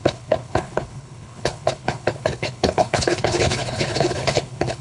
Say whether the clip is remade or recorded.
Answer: remade